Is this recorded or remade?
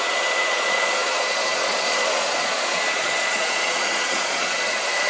remade